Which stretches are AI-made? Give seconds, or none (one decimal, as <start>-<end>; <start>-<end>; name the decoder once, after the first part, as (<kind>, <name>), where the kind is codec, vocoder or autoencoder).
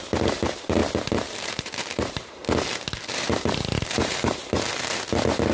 0.0-0.8 (vocoder, BigVGAN v2); 1.3-2.4; 3.0-5.5